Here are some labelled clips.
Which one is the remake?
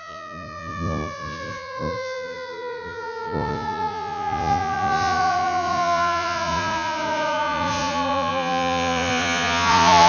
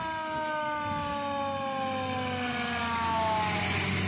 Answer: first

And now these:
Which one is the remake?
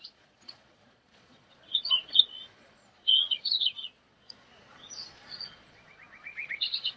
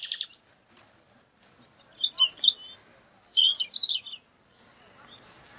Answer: first